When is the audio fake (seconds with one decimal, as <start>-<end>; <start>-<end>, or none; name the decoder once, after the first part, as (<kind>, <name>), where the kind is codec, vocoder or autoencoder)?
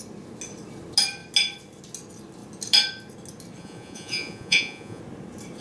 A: 3.6-5.0 (vocoder, Vocos)